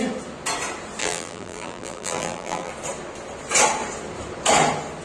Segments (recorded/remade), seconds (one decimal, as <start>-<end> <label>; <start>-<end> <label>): 0.0-1.0 recorded; 1.0-2.7 remade; 2.7-5.0 recorded